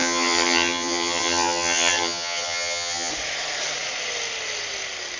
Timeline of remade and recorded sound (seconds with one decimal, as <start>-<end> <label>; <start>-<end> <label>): 0.0-3.1 remade; 3.1-5.2 recorded